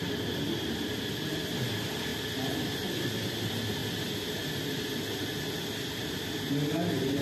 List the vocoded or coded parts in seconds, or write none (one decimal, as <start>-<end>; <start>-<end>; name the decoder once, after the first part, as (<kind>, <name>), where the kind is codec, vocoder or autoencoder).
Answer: none